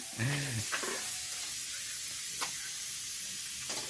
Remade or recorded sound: recorded